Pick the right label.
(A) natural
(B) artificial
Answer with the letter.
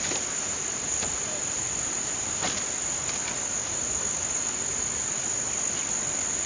A